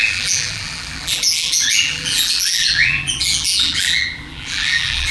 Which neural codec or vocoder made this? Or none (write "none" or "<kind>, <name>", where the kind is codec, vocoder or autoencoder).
vocoder, BigVGAN v2